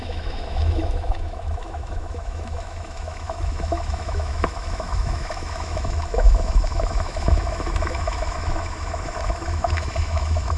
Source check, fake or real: fake